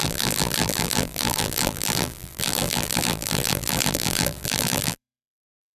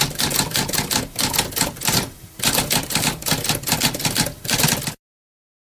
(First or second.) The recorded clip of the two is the second